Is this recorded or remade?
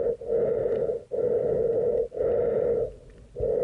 recorded